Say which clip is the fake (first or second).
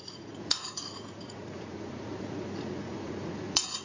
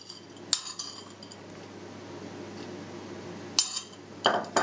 first